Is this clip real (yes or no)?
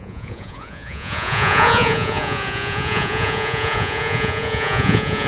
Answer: no